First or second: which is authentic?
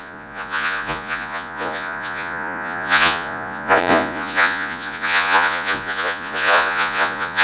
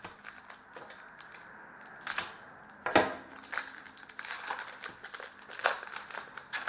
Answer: second